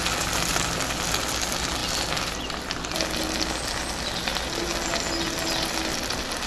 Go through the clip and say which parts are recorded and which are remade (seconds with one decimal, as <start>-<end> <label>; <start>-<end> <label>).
0.0-6.5 recorded